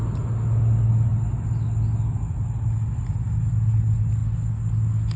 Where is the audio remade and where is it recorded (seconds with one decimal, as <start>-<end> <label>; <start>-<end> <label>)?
0.0-5.2 recorded

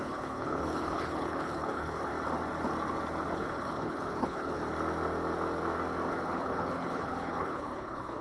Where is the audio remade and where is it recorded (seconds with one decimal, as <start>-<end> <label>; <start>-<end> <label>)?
0.0-2.1 remade; 2.1-3.3 recorded; 3.3-4.6 remade; 4.6-6.1 recorded; 6.1-8.2 remade

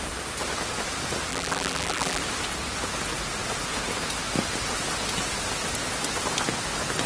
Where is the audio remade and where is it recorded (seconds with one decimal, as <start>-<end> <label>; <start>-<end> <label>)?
0.0-1.3 recorded; 1.3-2.2 remade; 2.2-7.1 recorded

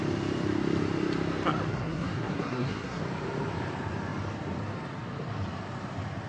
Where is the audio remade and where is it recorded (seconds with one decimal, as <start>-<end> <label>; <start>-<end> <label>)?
0.0-1.7 recorded; 1.7-3.0 remade; 3.0-6.3 recorded

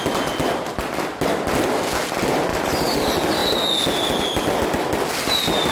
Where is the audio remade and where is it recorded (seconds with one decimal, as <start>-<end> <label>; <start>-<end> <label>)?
0.0-2.5 recorded; 2.5-3.0 remade; 3.0-5.7 recorded

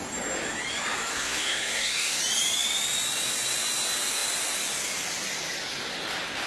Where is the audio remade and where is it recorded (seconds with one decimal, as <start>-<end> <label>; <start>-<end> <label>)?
0.0-1.1 recorded; 1.1-2.2 remade; 2.2-6.5 recorded

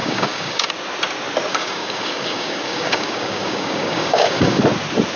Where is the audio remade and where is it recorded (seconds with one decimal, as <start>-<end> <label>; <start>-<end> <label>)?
0.0-0.7 remade; 0.7-1.5 recorded; 1.5-4.6 remade; 4.6-5.2 recorded